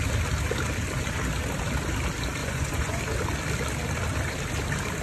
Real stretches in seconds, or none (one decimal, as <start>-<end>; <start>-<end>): 0.0-2.4; 3.0-5.0